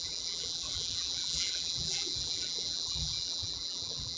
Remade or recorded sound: remade